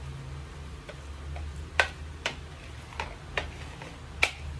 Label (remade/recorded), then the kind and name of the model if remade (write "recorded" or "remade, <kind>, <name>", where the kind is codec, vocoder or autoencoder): recorded